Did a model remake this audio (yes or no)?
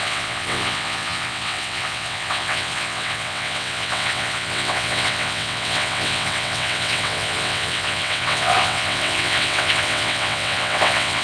yes